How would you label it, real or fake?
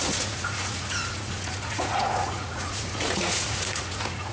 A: fake